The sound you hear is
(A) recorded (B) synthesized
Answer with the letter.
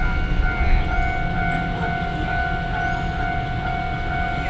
A